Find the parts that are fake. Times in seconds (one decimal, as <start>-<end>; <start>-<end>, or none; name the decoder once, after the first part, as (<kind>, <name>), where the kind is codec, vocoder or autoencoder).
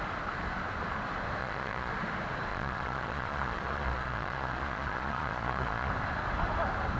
1.4-1.9 (vocoder, Vocos); 2.5-5.9